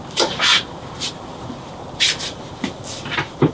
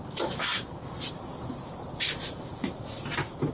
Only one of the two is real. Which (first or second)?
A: second